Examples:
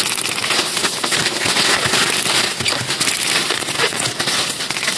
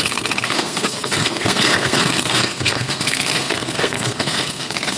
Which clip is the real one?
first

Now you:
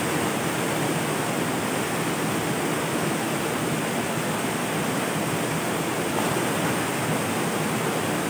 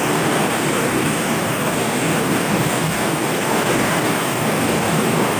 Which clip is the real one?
first